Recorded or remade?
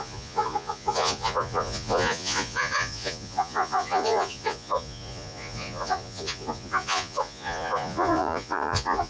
remade